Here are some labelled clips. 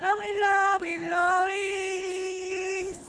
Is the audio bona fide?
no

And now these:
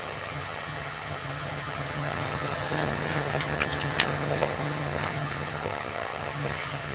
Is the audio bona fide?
no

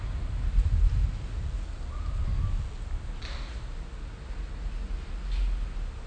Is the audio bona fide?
yes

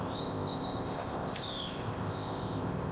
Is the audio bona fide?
no